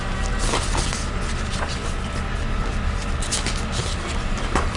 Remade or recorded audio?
recorded